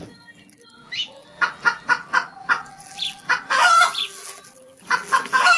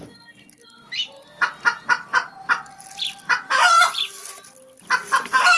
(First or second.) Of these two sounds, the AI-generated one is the first